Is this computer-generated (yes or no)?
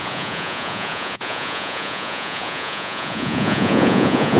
yes